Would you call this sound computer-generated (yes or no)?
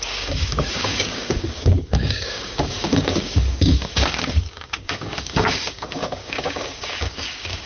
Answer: yes